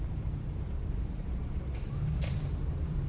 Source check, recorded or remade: remade